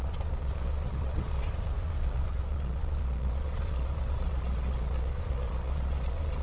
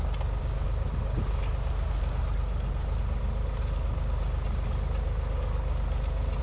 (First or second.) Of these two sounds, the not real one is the first